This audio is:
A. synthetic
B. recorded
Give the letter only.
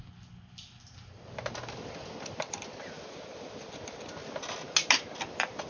B